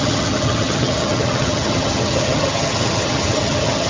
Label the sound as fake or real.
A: fake